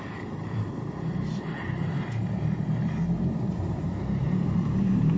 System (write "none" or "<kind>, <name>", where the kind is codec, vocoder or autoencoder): vocoder, BigVGAN v2